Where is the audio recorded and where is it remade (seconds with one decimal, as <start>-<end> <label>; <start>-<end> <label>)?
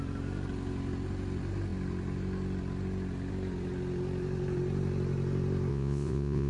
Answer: 0.0-5.7 recorded; 5.7-6.5 remade